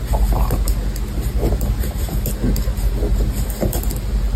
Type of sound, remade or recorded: recorded